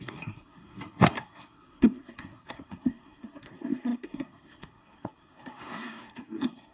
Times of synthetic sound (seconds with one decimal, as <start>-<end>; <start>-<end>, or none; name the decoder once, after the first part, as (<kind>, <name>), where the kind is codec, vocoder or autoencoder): 0.0-6.7 (codec, SNAC)